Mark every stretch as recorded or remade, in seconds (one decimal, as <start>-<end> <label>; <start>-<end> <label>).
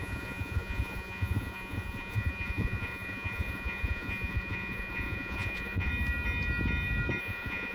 0.0-5.9 remade; 5.9-7.2 recorded; 7.2-7.7 remade